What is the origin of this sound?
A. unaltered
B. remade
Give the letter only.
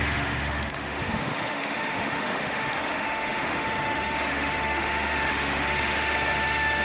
B